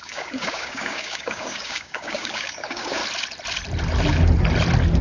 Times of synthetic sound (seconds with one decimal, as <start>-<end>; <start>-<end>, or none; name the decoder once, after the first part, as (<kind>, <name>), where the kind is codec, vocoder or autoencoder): 0.0-3.0 (codec, DAC)